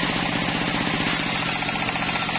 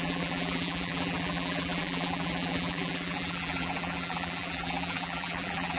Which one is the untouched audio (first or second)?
first